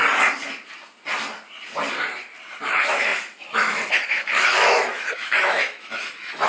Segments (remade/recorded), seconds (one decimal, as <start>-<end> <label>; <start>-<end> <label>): 0.0-2.7 recorded; 2.7-6.5 remade